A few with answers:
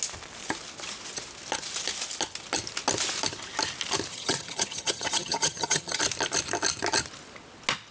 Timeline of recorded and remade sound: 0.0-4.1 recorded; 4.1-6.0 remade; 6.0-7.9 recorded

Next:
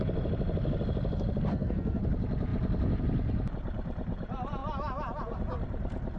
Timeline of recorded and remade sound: 0.0-1.5 recorded; 1.5-2.0 remade; 2.0-6.2 recorded